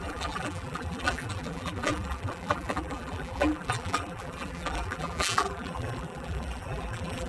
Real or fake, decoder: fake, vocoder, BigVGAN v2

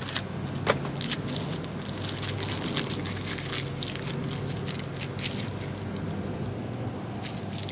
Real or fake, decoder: real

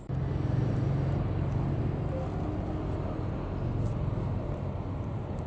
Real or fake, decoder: real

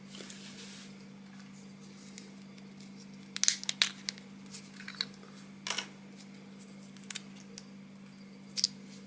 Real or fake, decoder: real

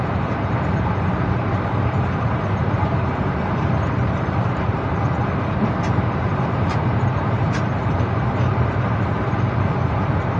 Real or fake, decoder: fake, vocoder, BigVGAN v2